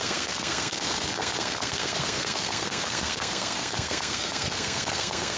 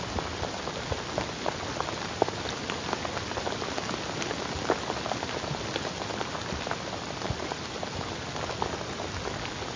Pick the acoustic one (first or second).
second